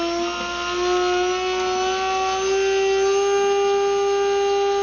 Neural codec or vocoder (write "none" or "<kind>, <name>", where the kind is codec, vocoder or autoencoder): none